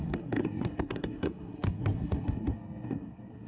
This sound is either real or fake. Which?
fake